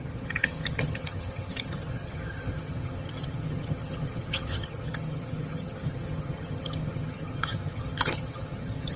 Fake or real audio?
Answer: fake